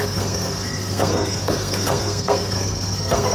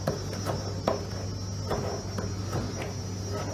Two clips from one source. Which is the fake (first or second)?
first